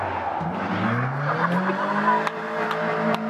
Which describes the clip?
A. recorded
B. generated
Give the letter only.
A